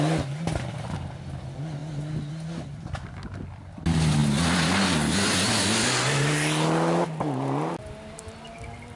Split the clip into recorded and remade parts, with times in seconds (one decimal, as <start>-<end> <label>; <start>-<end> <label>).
0.0-9.0 recorded